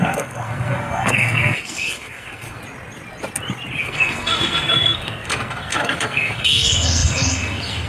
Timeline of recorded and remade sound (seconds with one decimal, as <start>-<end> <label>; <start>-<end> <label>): 0.0-2.6 remade; 2.6-3.8 recorded; 3.8-7.9 remade